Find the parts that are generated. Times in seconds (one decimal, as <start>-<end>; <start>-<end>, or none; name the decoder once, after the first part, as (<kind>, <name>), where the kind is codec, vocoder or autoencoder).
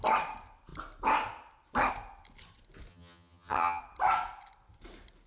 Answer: 2.9-3.8 (vocoder, HiFi-GAN)